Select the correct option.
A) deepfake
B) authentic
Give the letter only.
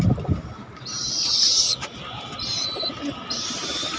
B